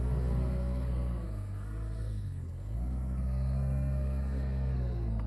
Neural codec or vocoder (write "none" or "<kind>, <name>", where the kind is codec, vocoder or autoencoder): codec, SNAC